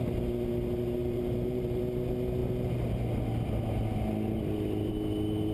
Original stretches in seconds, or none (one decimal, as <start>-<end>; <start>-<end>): 0.0-1.0; 1.8-5.5

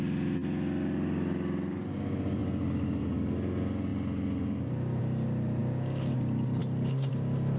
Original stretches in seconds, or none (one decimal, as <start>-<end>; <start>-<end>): 0.0-7.6

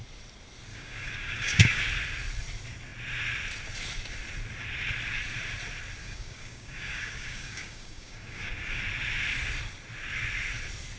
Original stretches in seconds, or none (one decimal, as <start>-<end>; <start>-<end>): 0.0-0.7; 1.8-6.0; 8.8-11.0